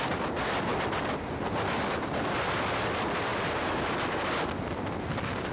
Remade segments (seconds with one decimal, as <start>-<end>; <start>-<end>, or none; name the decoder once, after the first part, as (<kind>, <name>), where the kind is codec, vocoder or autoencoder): none